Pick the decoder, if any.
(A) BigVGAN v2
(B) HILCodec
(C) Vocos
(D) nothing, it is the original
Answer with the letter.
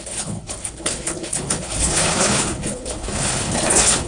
B